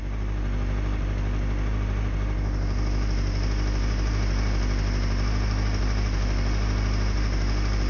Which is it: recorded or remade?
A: recorded